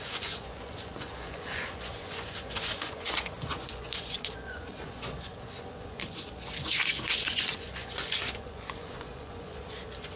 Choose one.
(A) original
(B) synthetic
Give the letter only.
B